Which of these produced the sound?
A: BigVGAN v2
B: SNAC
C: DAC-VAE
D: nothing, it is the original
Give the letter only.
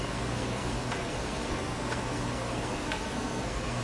B